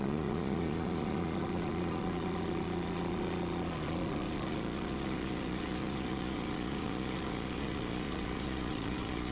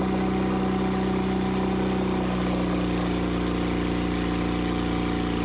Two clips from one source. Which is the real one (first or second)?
second